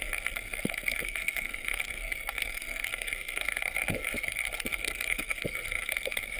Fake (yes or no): yes